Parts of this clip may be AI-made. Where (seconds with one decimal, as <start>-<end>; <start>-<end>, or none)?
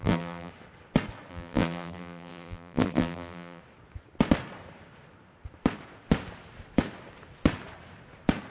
0.0-0.5; 1.3-3.6